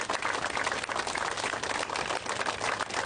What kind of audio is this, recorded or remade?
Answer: recorded